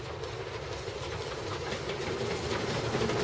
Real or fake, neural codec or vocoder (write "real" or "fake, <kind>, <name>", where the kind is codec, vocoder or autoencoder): real